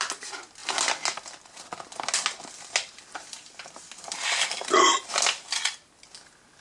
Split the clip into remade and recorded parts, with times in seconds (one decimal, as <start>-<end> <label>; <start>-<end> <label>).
0.0-6.6 recorded